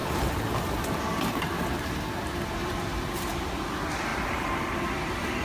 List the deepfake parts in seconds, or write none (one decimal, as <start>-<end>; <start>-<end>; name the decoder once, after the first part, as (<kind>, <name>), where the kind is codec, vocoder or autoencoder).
0.0-2.2 (vocoder, BigVGAN v2); 2.6-3.5; 4.1-4.8